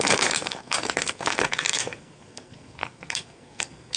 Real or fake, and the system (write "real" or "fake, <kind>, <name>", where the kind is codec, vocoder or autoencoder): fake, codec, SNAC